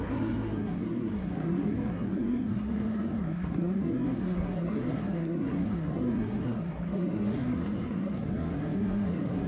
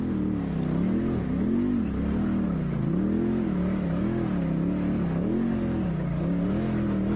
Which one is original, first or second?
second